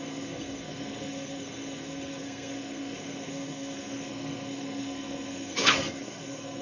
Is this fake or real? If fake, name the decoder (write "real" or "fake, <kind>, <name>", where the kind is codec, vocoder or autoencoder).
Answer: fake, codec, SNAC